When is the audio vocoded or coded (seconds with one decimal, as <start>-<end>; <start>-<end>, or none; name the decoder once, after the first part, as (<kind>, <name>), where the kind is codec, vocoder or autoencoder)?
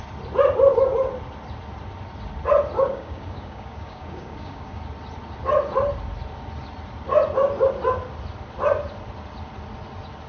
2.9-4.8 (codec, DAC)